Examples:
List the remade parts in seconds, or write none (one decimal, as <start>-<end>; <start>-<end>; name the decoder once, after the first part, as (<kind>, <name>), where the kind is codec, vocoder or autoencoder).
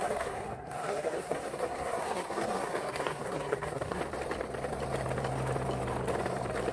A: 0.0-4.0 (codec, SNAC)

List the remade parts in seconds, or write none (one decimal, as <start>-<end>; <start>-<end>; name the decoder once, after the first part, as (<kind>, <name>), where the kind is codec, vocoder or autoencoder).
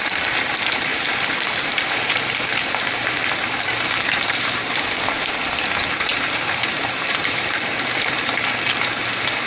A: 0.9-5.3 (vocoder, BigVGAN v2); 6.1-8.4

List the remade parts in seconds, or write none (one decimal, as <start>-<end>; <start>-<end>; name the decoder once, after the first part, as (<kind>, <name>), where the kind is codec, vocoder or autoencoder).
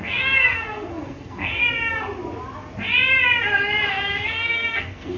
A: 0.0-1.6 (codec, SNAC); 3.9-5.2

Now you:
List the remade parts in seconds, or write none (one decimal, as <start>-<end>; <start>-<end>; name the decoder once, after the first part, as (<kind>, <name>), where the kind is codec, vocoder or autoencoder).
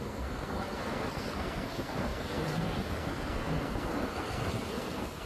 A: 0.0-5.3 (codec, SNAC)